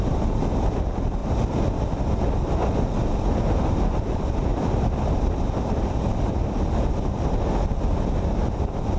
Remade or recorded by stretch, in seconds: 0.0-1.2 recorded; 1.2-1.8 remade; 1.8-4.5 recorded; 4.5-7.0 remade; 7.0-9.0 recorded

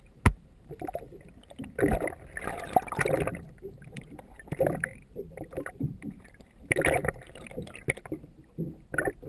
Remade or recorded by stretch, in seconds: 0.0-3.3 recorded; 3.3-8.0 remade; 8.0-9.3 recorded

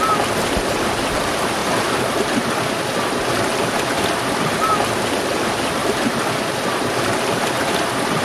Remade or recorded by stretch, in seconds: 0.0-8.2 recorded